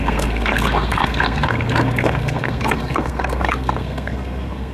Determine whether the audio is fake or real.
fake